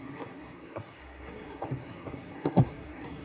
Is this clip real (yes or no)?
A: no